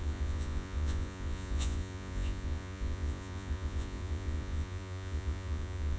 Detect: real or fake fake